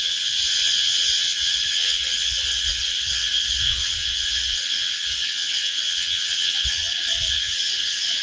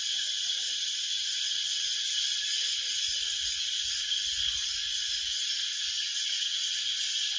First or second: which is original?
second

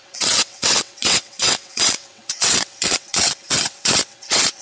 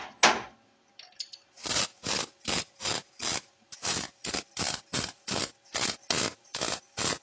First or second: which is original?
second